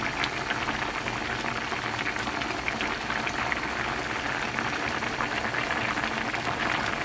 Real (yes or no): yes